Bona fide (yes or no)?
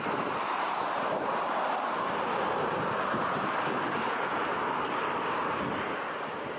yes